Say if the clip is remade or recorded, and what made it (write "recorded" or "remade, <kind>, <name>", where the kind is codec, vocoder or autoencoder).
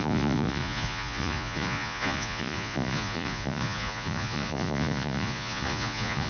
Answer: remade, vocoder, Vocos